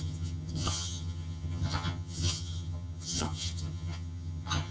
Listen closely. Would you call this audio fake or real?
fake